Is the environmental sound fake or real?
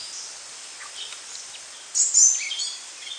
real